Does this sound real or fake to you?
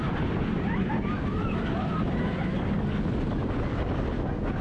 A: real